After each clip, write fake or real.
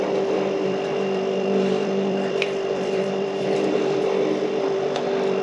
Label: fake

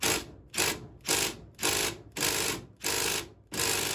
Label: real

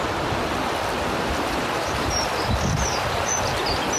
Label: real